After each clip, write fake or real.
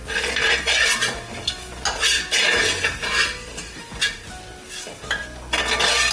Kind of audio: real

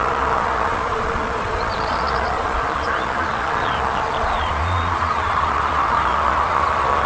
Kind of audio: fake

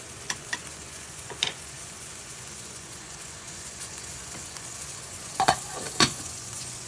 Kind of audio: fake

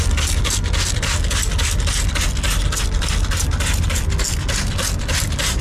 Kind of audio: real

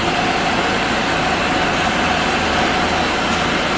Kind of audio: real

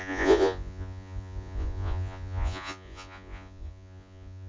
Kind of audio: fake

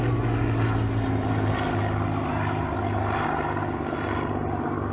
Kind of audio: real